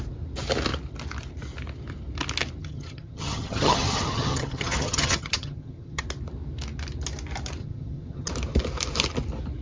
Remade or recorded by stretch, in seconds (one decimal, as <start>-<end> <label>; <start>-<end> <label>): 0.0-2.6 recorded; 2.6-6.0 remade; 6.0-7.6 recorded; 7.6-8.3 remade; 8.3-9.6 recorded